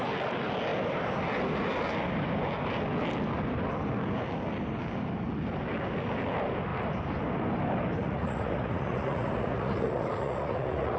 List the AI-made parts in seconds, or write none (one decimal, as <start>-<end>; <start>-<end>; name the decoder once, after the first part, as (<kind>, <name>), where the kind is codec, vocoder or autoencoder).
8.0-11.0 (vocoder, Vocos)